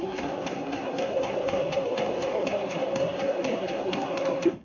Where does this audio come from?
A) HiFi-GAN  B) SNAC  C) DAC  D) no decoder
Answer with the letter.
B